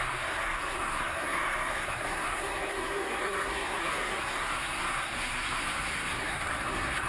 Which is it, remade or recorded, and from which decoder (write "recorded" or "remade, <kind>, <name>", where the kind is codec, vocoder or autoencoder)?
remade, codec, SNAC